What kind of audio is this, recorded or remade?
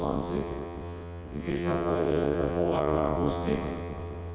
remade